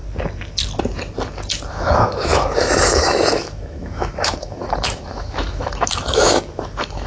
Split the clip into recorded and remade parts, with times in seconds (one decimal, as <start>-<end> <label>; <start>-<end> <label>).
0.0-1.7 recorded; 1.7-7.1 remade

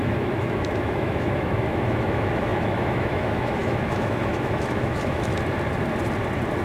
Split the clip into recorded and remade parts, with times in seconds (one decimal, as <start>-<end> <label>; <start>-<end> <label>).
0.0-5.3 remade; 5.3-6.6 recorded